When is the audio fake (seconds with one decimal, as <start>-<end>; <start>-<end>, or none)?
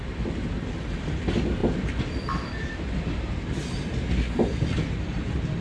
none